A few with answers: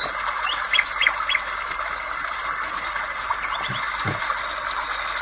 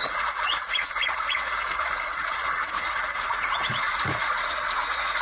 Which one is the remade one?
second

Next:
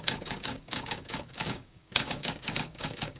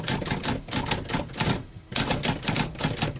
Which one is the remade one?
first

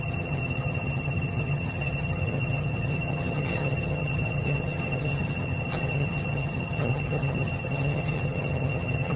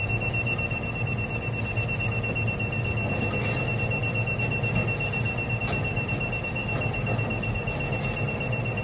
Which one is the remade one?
first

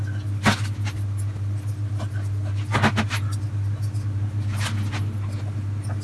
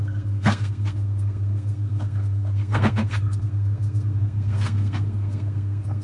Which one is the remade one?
second